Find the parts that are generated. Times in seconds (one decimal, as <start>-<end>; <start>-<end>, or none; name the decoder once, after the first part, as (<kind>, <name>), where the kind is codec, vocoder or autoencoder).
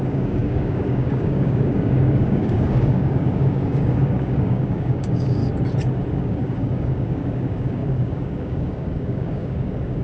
0.0-5.4 (codec, DAC); 6.1-10.0